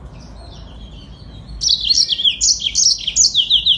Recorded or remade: recorded